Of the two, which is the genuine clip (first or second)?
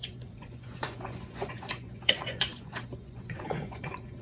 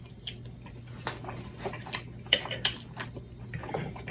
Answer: second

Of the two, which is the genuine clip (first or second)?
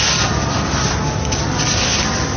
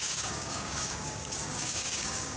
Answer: first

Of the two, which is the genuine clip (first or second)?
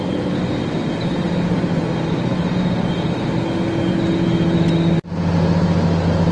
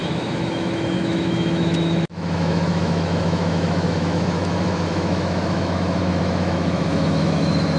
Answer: first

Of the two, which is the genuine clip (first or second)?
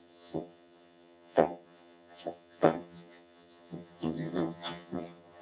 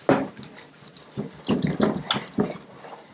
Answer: second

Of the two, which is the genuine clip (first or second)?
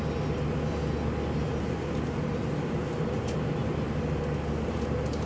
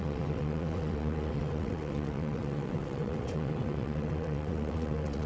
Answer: first